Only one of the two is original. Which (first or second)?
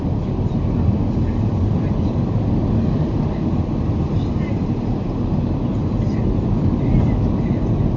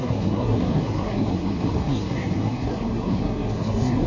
first